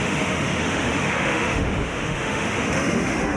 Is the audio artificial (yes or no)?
yes